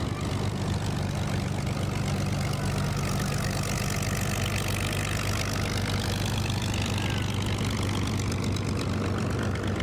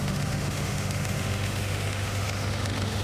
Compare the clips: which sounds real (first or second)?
first